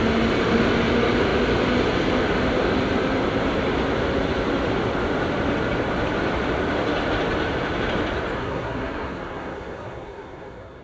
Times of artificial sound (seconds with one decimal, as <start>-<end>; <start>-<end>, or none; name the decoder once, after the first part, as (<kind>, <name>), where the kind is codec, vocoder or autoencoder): 8.4-10.8 (codec, SNAC)